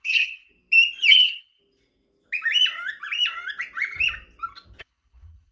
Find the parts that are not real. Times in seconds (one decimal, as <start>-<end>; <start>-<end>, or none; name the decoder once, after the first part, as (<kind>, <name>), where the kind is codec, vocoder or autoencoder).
0.0-0.5 (codec, HILCodec); 1.1-1.6; 4.8-5.5